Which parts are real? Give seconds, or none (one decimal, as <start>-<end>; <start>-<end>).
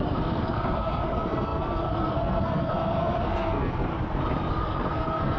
3.9-4.5